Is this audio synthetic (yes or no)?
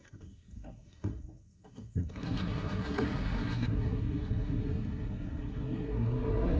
yes